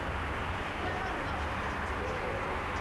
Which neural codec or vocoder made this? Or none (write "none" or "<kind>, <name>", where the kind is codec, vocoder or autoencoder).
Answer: none